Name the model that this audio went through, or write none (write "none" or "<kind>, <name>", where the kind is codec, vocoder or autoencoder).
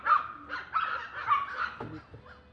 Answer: none